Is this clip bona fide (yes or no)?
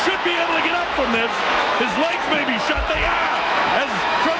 no